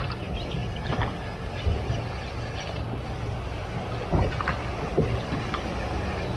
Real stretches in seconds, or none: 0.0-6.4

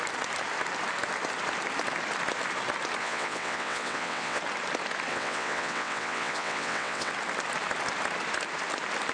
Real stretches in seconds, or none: 0.0-3.0; 4.4-5.1; 7.1-9.1

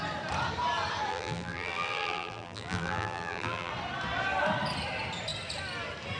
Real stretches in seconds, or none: 0.0-1.1; 3.7-6.2